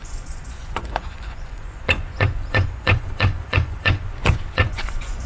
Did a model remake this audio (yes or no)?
yes